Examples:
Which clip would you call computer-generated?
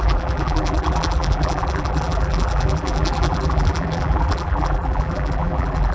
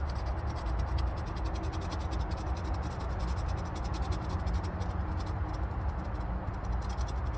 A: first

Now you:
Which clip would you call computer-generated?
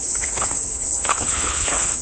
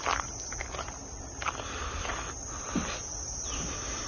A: first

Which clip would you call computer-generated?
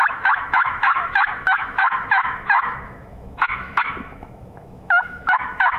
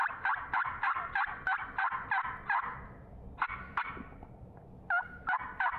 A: first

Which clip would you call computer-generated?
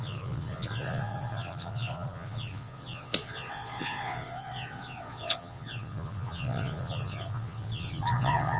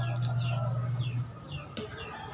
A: first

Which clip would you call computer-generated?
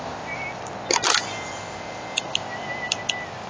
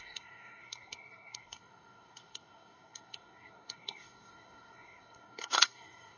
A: second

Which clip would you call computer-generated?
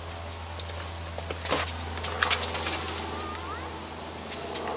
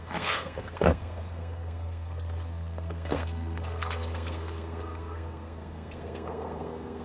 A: second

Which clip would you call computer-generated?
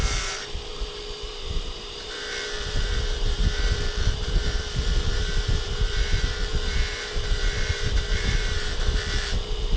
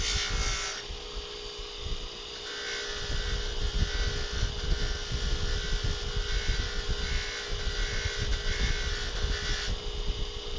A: first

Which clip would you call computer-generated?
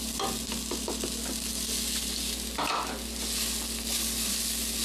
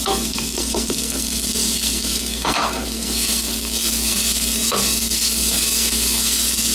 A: second